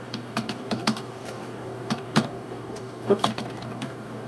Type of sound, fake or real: fake